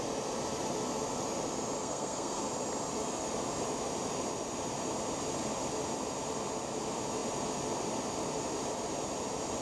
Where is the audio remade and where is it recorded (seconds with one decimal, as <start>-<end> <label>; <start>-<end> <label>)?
0.0-1.8 recorded; 1.8-2.4 remade; 2.4-9.6 recorded